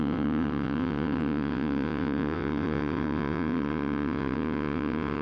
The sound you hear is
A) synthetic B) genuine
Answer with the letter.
A